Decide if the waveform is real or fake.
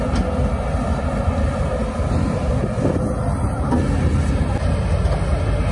real